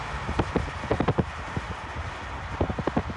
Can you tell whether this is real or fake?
real